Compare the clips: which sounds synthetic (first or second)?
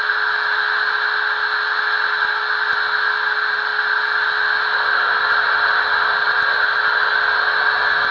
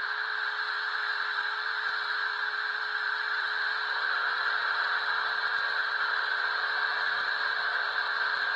second